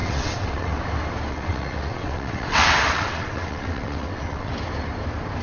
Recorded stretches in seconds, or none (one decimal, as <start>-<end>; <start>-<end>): 0.8-1.3; 4.5-5.4